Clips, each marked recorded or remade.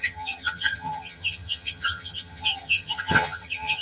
remade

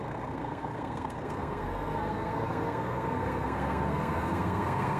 remade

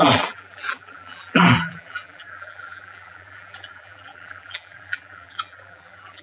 remade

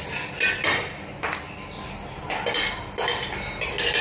recorded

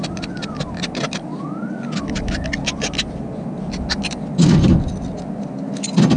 recorded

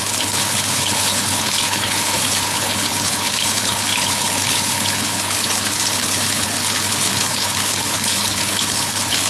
remade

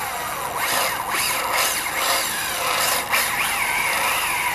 recorded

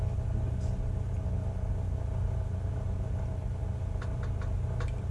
recorded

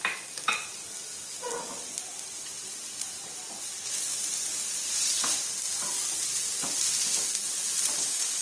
recorded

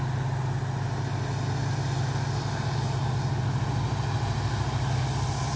recorded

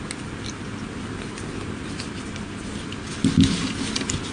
recorded